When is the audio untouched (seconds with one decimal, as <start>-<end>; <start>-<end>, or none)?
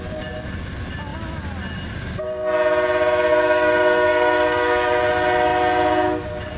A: 0.0-3.3; 5.0-6.6